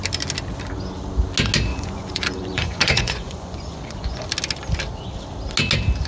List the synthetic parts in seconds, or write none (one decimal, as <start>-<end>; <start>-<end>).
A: 1.7-4.2